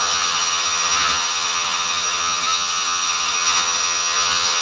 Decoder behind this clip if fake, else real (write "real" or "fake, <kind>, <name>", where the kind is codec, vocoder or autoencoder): fake, vocoder, HiFi-GAN